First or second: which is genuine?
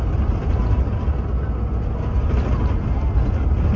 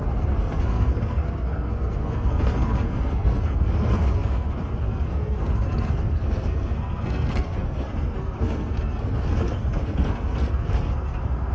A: first